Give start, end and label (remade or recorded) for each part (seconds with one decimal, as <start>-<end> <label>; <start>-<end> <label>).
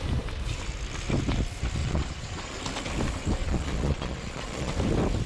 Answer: 0.0-1.8 recorded; 1.8-2.6 remade; 2.6-3.4 recorded; 3.4-4.7 remade; 4.7-5.3 recorded